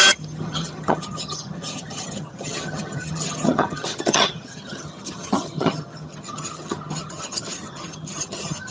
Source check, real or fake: fake